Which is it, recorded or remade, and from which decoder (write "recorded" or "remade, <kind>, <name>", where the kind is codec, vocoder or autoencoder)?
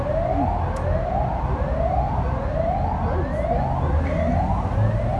recorded